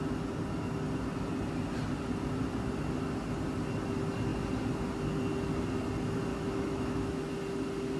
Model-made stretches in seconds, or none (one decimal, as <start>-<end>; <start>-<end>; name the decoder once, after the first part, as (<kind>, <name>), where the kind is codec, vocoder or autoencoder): 6.3-7.3 (autoencoder, DAC-VAE)